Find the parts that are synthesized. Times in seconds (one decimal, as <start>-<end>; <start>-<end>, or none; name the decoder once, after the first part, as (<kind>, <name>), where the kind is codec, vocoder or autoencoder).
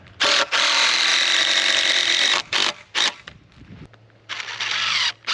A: none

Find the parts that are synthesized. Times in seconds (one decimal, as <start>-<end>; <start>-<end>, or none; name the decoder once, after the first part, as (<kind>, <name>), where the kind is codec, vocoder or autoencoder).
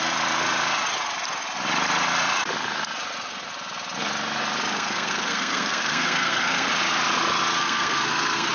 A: 4.7-6.7 (codec, SNAC); 7.6-8.5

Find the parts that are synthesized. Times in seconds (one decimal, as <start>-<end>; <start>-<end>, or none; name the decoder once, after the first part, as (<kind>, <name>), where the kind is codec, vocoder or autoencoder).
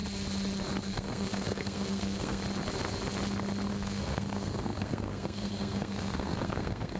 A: 0.8-2.4 (codec, SNAC); 3.7-7.0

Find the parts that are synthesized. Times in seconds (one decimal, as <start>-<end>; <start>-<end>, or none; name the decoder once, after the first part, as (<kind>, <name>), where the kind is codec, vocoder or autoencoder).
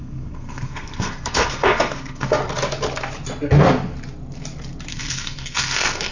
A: 0.0-2.4 (codec, SNAC); 4.9-6.1